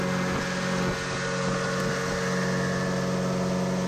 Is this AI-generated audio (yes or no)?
no